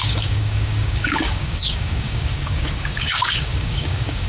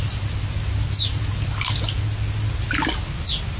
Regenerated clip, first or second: first